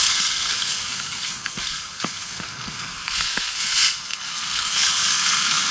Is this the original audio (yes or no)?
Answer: no